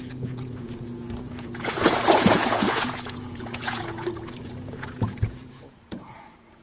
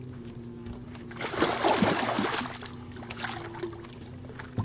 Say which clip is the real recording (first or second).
second